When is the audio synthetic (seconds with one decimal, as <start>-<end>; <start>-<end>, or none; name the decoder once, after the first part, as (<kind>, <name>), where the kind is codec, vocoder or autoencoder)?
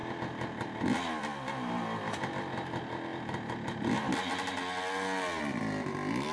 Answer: none